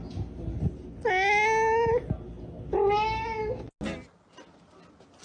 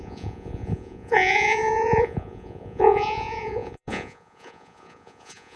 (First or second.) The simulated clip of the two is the second